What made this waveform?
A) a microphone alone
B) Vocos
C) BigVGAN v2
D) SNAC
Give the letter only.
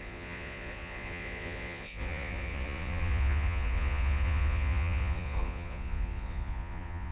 B